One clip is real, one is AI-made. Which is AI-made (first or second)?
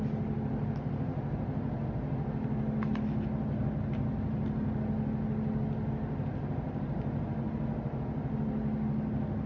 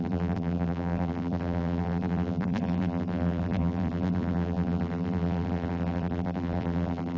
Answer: second